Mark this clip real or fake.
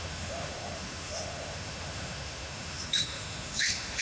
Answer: fake